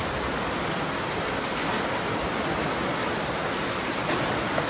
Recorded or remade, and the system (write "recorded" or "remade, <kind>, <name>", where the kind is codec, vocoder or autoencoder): recorded